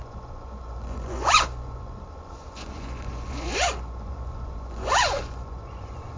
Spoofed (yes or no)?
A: yes